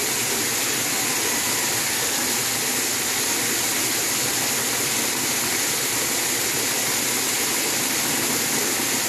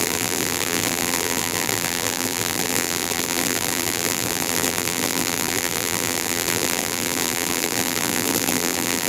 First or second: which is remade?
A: second